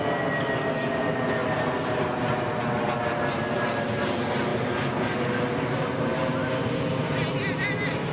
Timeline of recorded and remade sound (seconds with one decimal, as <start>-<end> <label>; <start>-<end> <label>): 0.0-1.4 recorded; 1.4-2.2 remade; 2.2-8.1 recorded